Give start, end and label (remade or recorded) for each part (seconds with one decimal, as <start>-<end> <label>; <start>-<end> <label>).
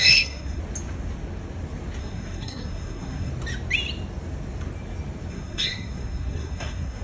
0.0-0.6 remade; 0.6-2.0 recorded; 2.0-3.3 remade; 3.3-5.3 recorded; 5.3-7.0 remade